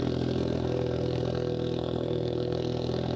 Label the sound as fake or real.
fake